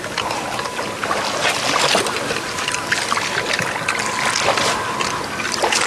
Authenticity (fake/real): real